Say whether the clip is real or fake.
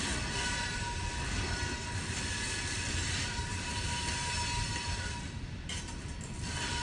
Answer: real